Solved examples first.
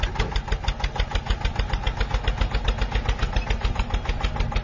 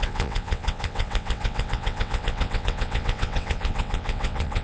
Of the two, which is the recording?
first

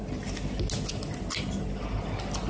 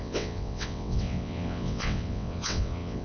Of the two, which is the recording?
first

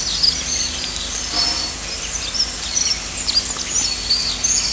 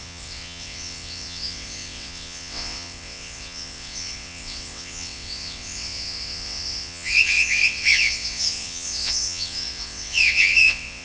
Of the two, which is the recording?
first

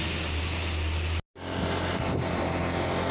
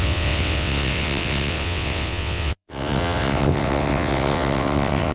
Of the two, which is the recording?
first